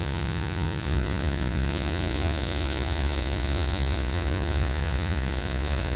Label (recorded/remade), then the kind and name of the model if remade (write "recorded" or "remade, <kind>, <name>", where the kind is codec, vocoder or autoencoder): remade, vocoder, Vocos